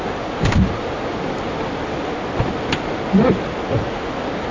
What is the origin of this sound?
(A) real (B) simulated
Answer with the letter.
A